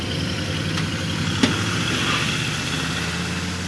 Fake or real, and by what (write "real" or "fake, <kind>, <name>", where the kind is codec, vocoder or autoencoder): real